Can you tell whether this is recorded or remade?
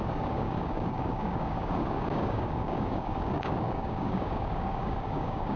remade